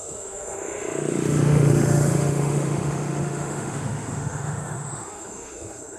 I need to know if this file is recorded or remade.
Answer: remade